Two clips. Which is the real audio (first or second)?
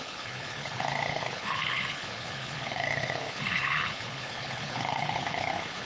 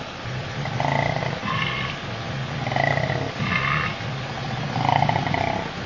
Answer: second